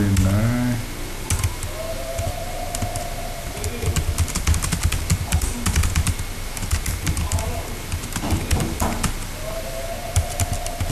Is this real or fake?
real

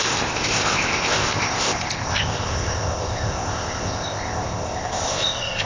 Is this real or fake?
fake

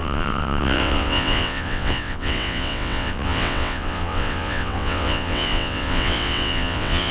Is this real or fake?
fake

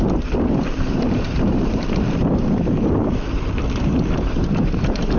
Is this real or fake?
fake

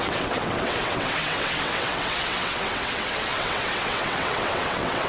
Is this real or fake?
fake